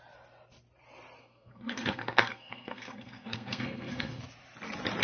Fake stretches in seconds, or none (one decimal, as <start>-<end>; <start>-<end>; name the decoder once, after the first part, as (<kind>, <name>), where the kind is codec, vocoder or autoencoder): 1.2-4.2 (codec, SNAC)